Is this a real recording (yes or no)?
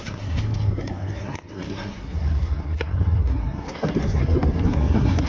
no